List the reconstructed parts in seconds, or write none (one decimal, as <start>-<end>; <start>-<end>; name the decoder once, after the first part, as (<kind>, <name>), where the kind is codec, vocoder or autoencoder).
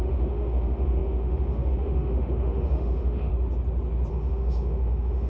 0.0-3.3 (autoencoder, DAC-VAE); 4.1-5.3